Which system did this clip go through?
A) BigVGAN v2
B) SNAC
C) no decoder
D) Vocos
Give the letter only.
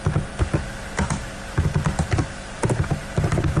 C